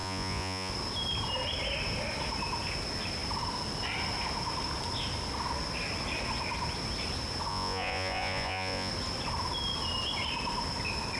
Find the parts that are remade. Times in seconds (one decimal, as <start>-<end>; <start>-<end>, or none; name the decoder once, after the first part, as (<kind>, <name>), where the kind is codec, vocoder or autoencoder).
0.0-0.7 (vocoder, Vocos); 7.5-8.9